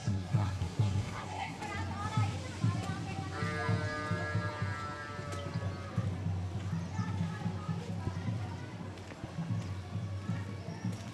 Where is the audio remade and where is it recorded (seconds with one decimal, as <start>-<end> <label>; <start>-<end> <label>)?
0.0-1.6 remade; 1.6-11.1 recorded

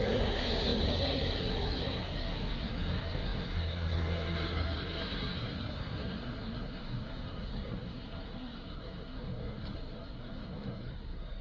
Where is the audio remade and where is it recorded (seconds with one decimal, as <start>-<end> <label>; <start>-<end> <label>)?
0.0-11.4 remade

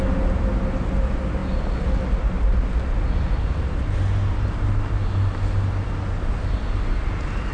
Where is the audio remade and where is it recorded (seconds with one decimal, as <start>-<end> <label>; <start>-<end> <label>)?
0.0-7.5 recorded

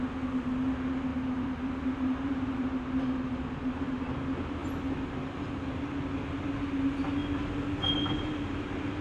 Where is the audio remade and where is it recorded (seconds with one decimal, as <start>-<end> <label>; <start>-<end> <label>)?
0.0-1.1 recorded; 1.1-3.3 remade; 3.3-9.0 recorded

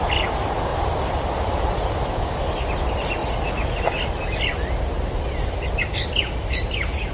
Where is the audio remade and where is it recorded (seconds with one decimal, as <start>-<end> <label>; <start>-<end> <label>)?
0.0-0.7 recorded; 0.7-1.5 remade; 1.5-7.1 recorded

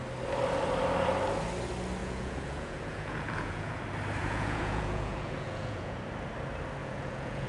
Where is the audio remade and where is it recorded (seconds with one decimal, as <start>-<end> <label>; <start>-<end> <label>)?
0.0-2.0 recorded; 2.0-3.8 remade; 3.8-4.2 recorded; 4.2-6.0 remade; 6.0-6.8 recorded; 6.8-7.5 remade